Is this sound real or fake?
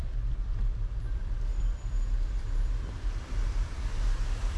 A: fake